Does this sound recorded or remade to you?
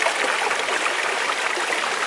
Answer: recorded